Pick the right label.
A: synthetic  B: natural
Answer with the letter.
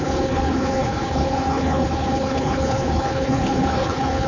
A